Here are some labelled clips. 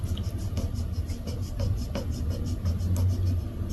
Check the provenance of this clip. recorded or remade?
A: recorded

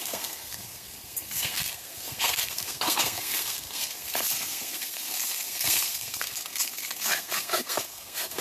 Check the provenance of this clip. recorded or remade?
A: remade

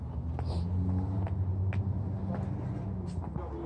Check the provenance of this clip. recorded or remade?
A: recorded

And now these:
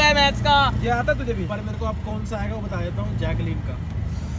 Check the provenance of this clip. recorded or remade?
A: recorded